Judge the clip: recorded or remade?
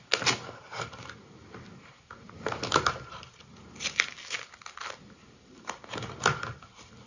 recorded